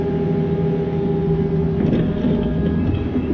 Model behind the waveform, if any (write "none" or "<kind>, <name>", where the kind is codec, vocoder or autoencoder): none